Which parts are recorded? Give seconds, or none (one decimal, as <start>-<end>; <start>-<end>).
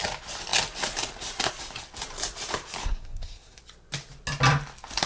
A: 0.0-2.8; 3.6-5.1